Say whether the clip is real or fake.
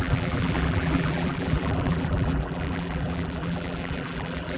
fake